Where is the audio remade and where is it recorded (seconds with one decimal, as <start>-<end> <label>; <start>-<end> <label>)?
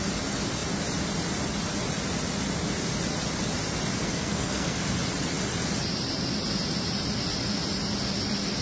0.0-4.0 recorded; 4.0-4.8 remade; 4.8-8.6 recorded